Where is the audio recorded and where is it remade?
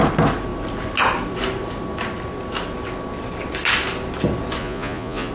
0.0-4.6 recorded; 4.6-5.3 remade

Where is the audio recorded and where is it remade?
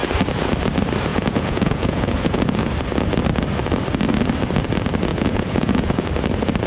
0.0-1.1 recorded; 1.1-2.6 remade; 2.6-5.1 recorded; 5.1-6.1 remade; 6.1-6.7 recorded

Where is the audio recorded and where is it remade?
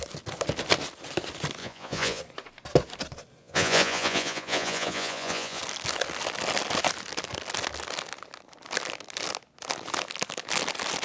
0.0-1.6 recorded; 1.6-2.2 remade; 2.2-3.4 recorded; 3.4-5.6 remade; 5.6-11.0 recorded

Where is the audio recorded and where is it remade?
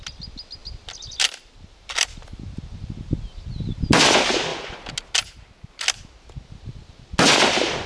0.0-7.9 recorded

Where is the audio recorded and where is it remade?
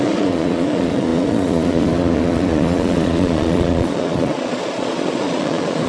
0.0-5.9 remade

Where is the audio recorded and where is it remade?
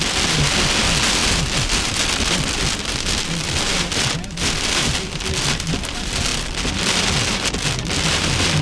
0.0-8.6 recorded